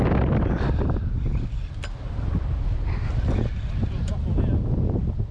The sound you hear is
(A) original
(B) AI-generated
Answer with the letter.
A